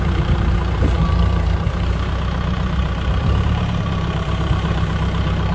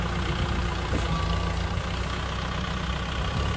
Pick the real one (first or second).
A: second